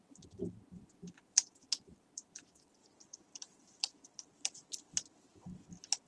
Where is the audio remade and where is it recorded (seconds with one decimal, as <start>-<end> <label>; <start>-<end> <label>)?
0.0-2.8 recorded; 2.8-4.5 remade; 4.5-6.1 recorded